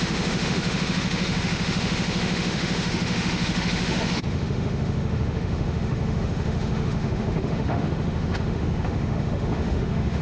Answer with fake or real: fake